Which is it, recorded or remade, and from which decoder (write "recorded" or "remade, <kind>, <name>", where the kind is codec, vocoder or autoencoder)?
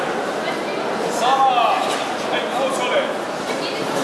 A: recorded